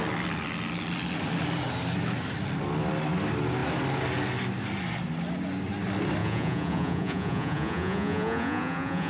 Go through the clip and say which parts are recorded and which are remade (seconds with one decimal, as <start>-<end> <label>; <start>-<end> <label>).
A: 0.0-6.2 recorded; 6.2-9.1 remade